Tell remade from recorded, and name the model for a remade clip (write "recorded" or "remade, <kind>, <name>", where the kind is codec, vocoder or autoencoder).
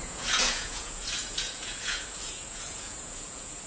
remade, vocoder, Vocos